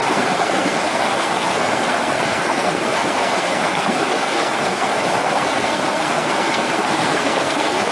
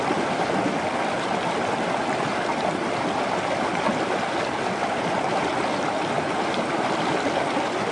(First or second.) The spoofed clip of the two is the first